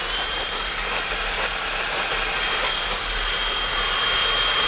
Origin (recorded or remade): recorded